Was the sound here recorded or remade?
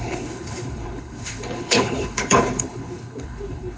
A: remade